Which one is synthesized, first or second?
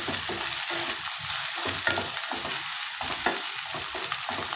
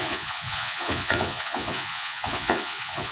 second